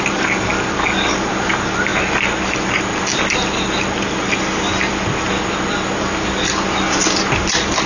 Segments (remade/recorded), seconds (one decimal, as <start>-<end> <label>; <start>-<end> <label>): 0.0-7.9 recorded